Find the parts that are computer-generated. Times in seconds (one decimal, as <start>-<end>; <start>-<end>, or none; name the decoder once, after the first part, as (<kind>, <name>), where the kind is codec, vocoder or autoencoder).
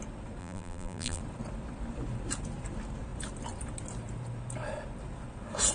0.4-1.2 (vocoder, BigVGAN v2)